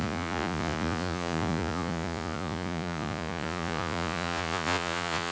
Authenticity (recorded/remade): remade